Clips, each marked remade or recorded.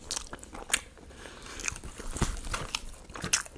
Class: recorded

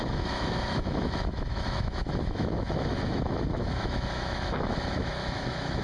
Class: remade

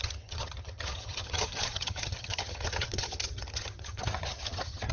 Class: remade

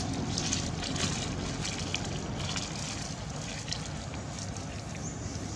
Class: recorded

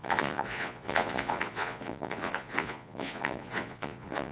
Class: remade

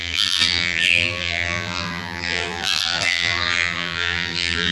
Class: remade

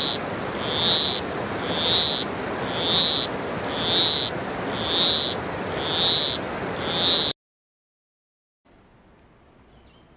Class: recorded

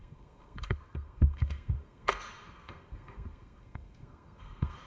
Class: remade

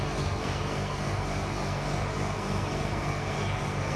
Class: remade